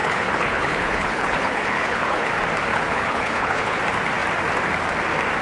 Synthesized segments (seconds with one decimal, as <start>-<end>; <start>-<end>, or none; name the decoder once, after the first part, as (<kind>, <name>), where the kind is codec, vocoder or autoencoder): 0.0-2.3 (codec, HILCodec); 2.7-3.8